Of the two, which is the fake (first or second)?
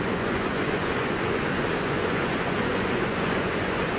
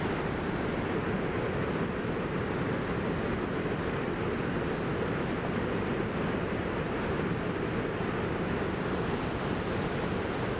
first